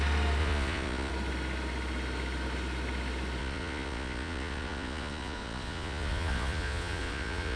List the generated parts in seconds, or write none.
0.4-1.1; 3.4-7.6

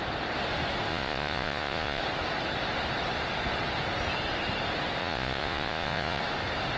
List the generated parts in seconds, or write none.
0.9-2.0; 5.0-6.2

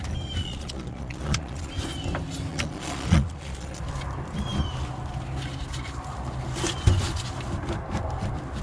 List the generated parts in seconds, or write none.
0.4-1.7; 2.5-3.8

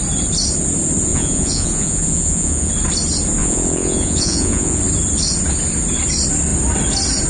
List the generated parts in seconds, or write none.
1.1-2.7; 3.4-4.8